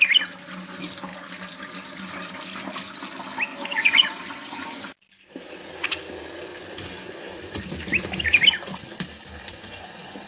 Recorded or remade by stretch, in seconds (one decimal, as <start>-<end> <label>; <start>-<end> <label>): 0.0-3.5 recorded; 3.5-4.9 remade; 4.9-6.5 recorded; 6.5-7.6 remade; 7.6-9.4 recorded; 9.4-10.3 remade